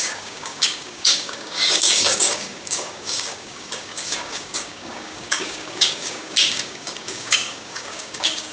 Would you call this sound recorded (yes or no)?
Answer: no